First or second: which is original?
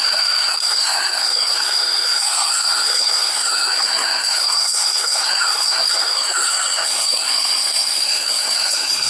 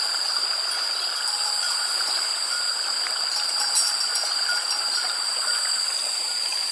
second